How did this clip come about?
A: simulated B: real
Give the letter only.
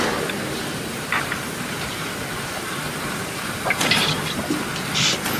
A